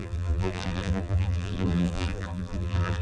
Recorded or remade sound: remade